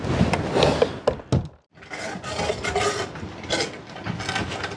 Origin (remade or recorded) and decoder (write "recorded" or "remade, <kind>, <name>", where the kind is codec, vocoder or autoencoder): recorded